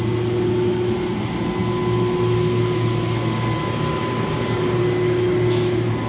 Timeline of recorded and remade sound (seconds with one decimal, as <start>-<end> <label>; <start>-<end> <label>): 0.0-6.1 recorded